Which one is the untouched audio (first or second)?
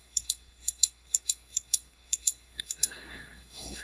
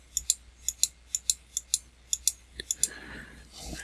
second